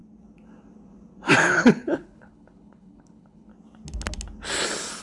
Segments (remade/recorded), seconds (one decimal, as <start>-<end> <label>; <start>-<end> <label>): 0.0-1.4 recorded; 1.4-3.5 remade; 3.5-5.0 recorded